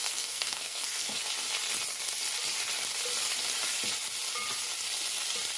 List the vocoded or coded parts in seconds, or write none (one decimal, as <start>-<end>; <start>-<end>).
0.0-1.2